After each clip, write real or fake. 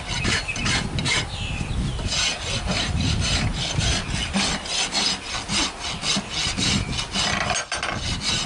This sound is real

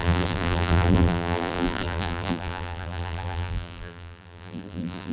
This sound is fake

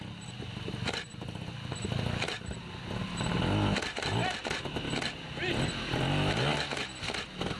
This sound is real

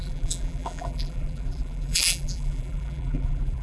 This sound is fake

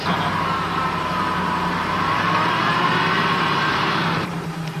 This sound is fake